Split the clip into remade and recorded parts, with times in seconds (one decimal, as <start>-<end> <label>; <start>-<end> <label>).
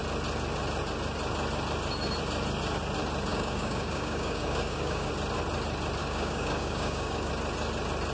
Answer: 0.0-3.3 recorded; 3.3-5.1 remade; 5.1-6.0 recorded; 6.0-7.3 remade; 7.3-8.1 recorded